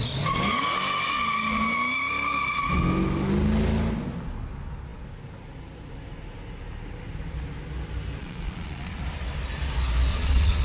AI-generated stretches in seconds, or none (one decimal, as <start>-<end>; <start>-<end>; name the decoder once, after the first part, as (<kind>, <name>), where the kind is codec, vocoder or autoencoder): 8.2-9.0 (vocoder, Vocos); 10.1-10.6